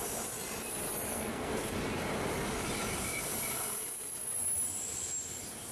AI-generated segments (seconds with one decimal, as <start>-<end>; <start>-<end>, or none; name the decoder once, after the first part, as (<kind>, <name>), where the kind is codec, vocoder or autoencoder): 1.1-1.7 (codec, SNAC)